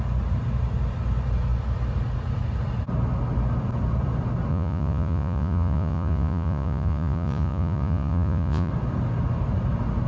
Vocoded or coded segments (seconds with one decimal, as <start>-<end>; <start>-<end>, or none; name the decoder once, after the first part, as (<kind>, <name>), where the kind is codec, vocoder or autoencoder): 4.5-8.7 (vocoder, Vocos)